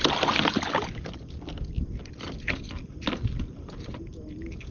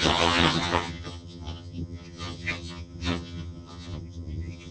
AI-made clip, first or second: second